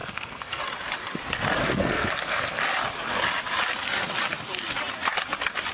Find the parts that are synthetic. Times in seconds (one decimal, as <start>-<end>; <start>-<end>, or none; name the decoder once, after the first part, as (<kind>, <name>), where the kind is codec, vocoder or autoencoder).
0.0-0.6 (codec, SNAC); 1.6-2.6